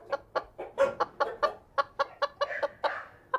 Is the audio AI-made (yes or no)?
no